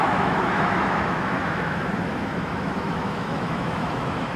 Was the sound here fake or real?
fake